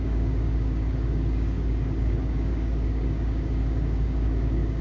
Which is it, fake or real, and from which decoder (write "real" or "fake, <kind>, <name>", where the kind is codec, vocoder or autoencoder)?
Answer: fake, codec, DAC